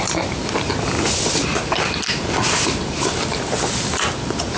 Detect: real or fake real